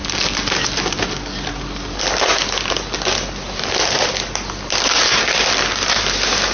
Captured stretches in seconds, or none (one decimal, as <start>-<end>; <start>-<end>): 0.0-6.5